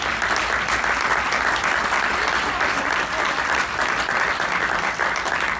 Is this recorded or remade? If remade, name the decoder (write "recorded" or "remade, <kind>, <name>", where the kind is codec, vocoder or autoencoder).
recorded